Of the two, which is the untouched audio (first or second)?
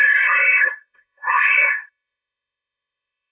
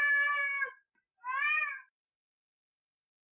second